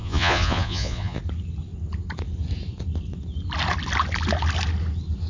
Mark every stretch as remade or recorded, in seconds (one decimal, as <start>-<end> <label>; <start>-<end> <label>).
0.0-1.2 remade; 1.2-5.3 recorded